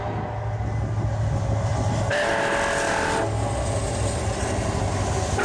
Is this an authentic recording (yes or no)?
yes